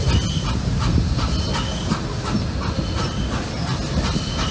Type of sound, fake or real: real